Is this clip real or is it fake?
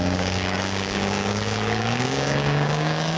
fake